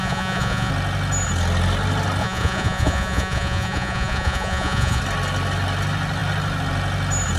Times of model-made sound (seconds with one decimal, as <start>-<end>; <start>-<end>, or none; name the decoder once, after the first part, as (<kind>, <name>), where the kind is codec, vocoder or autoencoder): 0.0-0.7 (vocoder, Vocos); 2.2-5.0